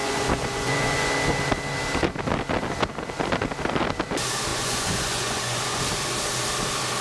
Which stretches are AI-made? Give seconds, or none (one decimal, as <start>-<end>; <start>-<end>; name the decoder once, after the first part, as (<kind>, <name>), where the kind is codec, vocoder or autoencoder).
0.0-1.1 (vocoder, Vocos); 4.5-5.8